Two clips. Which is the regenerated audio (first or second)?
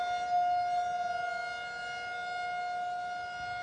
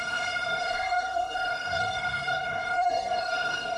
second